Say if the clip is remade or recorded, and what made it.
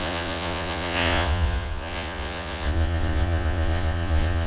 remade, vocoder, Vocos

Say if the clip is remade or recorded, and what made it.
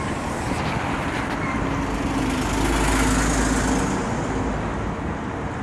recorded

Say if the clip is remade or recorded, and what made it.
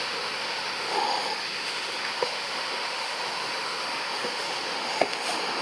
remade, autoencoder, DAC-VAE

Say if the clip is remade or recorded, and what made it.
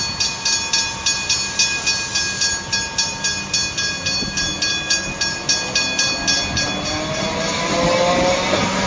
recorded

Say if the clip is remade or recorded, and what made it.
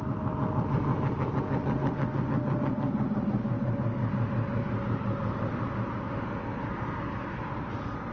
recorded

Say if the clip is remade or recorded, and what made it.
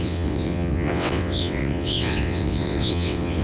remade, vocoder, WaveNeXt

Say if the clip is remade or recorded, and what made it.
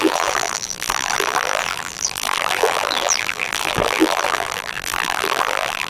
remade, vocoder, BigVGAN v2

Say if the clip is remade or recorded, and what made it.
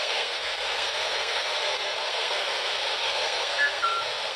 remade, codec, SNAC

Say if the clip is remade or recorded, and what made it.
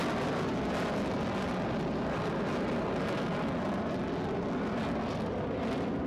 recorded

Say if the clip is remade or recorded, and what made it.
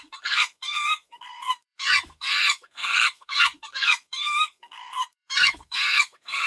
remade, codec, SNAC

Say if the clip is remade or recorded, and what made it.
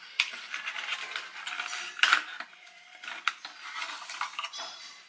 recorded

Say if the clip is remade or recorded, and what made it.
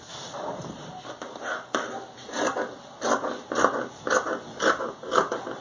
recorded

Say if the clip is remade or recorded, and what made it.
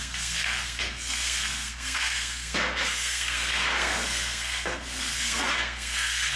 remade, codec, SNAC